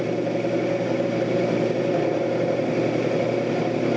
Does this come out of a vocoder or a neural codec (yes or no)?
no